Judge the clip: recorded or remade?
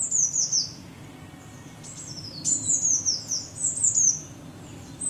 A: recorded